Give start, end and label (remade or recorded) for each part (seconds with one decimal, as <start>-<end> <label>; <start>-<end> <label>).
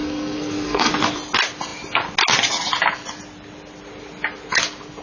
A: 0.0-0.9 remade; 0.9-5.0 recorded